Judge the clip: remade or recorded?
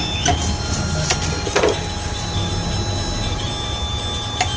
recorded